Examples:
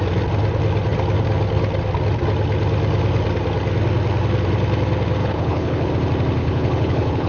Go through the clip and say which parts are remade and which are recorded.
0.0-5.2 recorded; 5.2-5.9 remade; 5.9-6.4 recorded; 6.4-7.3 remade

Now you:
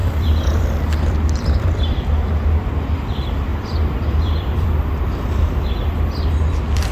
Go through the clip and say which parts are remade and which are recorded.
0.0-2.7 remade; 2.7-3.5 recorded; 3.5-5.7 remade; 5.7-6.9 recorded